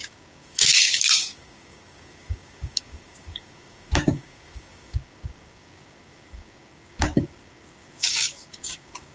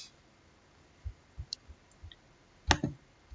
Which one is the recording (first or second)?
second